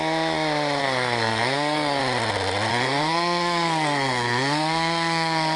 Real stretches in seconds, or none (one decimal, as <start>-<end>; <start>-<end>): 0.0-0.8; 2.0-2.7